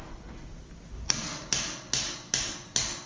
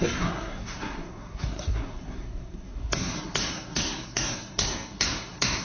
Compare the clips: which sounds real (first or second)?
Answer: first